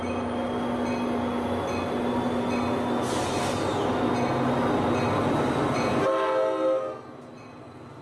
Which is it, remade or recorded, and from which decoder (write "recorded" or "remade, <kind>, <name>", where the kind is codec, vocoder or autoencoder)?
recorded